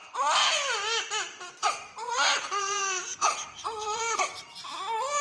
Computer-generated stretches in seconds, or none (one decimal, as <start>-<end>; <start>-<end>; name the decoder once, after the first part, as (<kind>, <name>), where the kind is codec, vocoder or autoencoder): 1.6-4.0 (vocoder, Vocos)